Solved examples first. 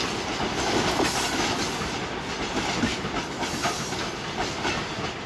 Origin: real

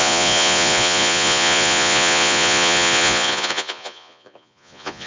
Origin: fake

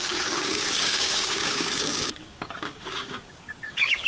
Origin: fake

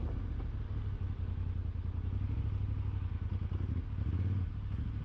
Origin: real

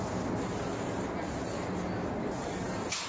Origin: real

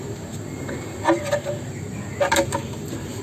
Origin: real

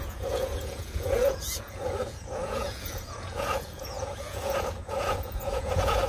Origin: fake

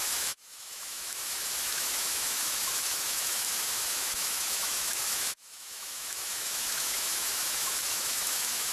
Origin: fake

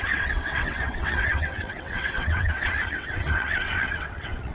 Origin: fake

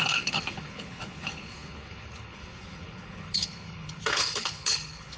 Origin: fake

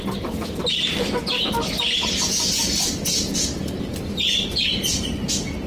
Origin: real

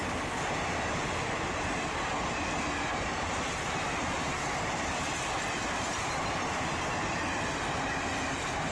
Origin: real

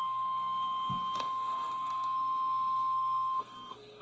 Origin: fake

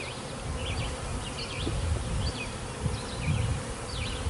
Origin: real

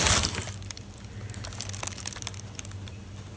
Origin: real